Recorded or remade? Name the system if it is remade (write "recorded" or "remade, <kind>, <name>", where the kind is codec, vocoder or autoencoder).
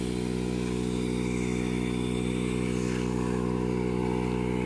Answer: recorded